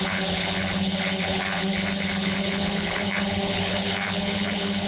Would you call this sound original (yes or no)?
no